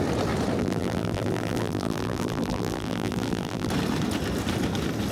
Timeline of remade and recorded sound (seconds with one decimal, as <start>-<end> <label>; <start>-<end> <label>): 0.0-0.6 recorded; 0.6-3.7 remade; 3.7-5.1 recorded